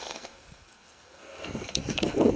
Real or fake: fake